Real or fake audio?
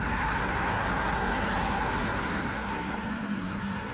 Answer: fake